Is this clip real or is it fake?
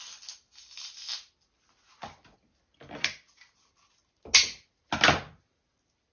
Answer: real